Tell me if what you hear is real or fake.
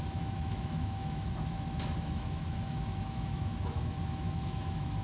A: fake